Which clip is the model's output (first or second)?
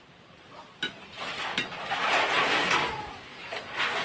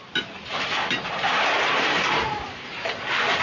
second